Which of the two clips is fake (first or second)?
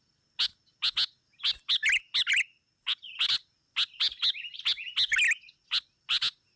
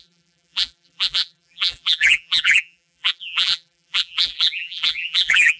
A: second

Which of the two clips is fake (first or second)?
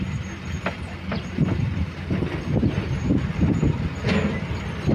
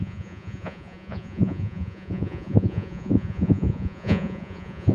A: second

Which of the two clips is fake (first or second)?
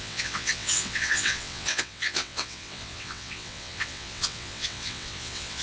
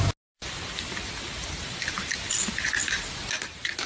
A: first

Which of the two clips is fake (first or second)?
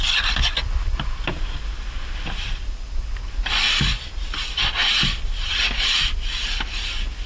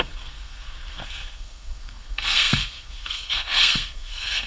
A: second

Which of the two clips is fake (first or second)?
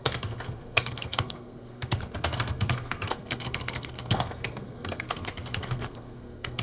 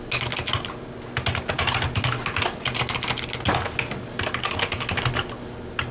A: first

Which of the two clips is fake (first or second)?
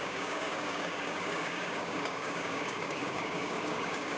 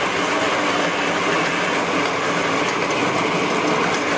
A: first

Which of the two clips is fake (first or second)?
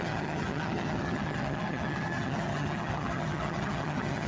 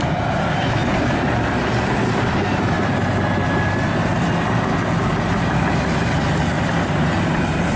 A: first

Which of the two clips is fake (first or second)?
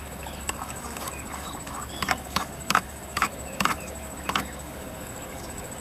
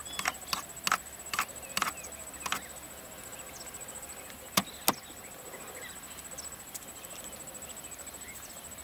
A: first